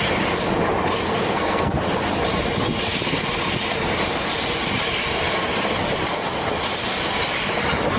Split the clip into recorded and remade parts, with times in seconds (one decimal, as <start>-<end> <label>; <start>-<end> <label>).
0.0-1.1 recorded; 1.1-1.8 remade; 1.8-8.0 recorded